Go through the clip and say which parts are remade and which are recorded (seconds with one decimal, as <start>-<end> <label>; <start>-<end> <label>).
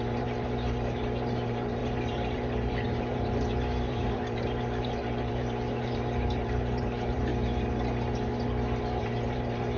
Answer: 0.0-7.3 remade; 7.3-8.8 recorded; 8.8-9.8 remade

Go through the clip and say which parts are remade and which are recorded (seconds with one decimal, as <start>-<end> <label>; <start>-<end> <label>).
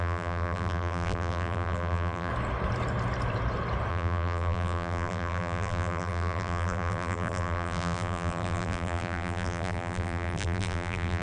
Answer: 0.0-2.3 remade; 2.3-3.9 recorded; 3.9-11.2 remade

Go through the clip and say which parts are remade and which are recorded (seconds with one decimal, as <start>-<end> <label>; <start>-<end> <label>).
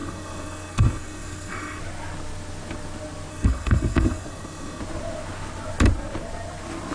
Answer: 0.0-1.8 remade; 1.8-3.3 recorded; 3.3-4.8 remade; 4.8-6.9 recorded